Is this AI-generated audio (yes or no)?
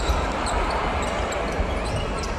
no